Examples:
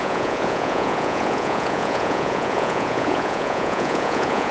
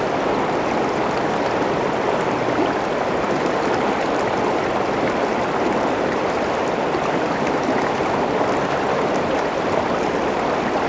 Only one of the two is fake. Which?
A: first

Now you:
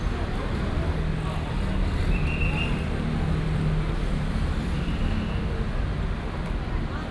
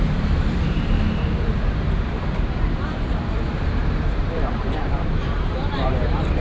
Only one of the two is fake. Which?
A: second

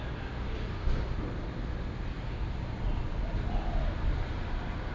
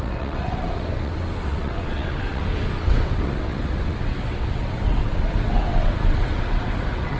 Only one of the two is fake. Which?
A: second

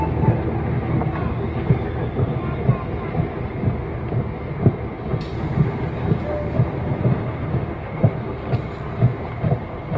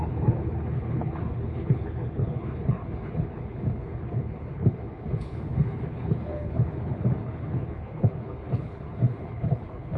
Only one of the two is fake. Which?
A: second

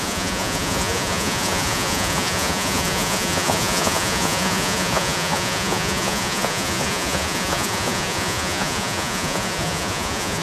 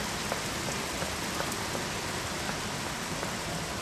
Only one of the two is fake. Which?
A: first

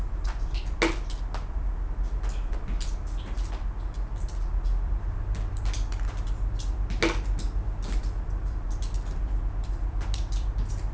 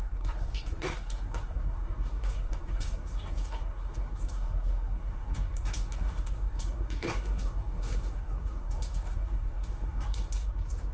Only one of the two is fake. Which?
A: second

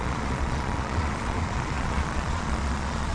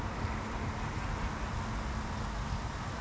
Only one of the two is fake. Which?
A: first